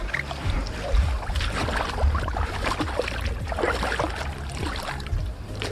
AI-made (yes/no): no